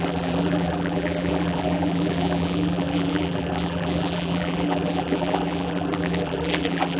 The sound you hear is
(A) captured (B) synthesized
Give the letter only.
B